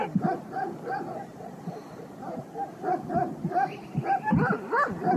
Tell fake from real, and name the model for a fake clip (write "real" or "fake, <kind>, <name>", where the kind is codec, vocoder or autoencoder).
real